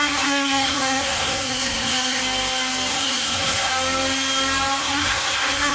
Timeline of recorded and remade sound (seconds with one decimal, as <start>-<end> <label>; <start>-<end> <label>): 0.0-2.2 remade; 2.2-2.9 recorded; 2.9-3.7 remade; 3.7-4.8 recorded; 4.8-5.7 remade